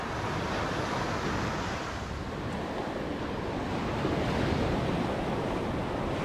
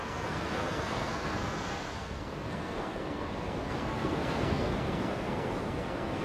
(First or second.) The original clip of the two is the first